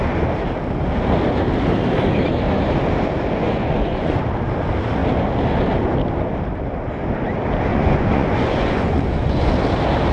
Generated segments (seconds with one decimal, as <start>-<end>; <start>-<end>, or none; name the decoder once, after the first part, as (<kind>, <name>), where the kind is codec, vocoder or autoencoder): 3.4-4.2 (vocoder, Vocos); 7.7-9.5